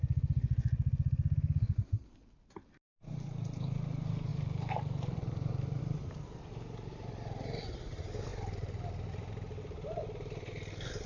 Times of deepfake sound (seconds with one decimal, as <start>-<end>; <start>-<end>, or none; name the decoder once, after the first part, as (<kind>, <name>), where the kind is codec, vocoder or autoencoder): 4.3-5.8 (vocoder, BigVGAN v2)